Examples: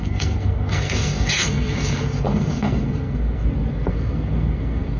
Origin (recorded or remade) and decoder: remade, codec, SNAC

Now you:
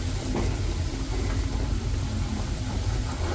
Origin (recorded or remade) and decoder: recorded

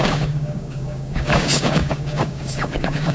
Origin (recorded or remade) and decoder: remade, codec, DAC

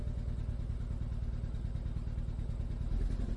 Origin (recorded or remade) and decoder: recorded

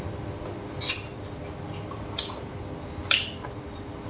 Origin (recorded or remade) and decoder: recorded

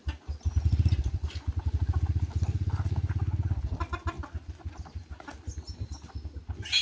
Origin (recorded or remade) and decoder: recorded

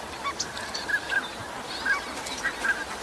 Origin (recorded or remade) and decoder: recorded